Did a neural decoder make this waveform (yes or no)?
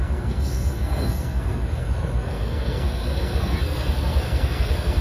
yes